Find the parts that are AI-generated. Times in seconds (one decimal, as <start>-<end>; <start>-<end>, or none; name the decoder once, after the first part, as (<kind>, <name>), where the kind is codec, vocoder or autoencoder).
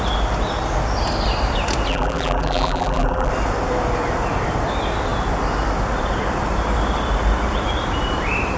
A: 1.9-3.3 (vocoder, BigVGAN v2)